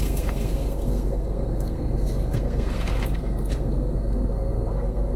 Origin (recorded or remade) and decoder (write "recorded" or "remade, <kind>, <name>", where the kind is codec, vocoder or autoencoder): remade, codec, SNAC